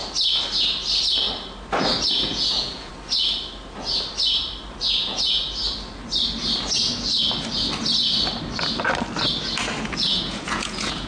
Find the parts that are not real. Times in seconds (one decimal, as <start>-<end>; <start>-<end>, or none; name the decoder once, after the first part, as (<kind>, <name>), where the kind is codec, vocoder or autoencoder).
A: 2.1-2.9 (vocoder, Vocos); 4.8-5.4; 9.8-11.1